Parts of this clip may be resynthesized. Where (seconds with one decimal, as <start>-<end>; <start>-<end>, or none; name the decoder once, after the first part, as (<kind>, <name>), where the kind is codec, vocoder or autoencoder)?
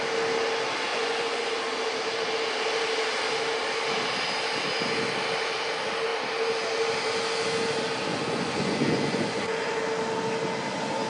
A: 0.9-1.5 (vocoder, Vocos); 8.1-9.8